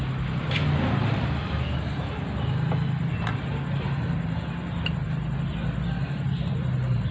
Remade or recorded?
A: recorded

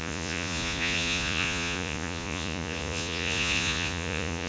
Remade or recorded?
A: remade